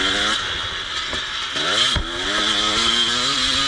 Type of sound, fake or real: real